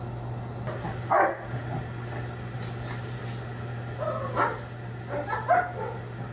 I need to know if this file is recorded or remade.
recorded